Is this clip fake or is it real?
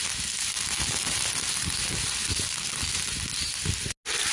real